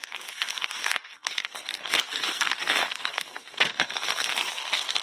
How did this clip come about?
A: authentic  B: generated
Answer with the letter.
B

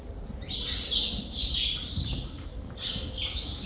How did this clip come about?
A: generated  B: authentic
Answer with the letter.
B